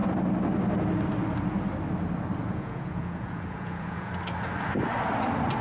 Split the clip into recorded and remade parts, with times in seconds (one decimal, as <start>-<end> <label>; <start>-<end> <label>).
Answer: 0.0-2.4 recorded; 2.4-4.1 remade; 4.1-5.6 recorded